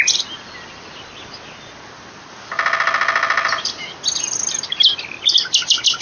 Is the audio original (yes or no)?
yes